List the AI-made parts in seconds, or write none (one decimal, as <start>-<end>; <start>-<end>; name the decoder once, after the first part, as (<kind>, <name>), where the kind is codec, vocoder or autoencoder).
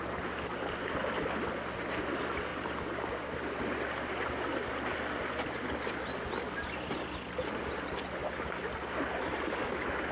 none